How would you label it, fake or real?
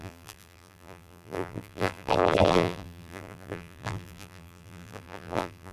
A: fake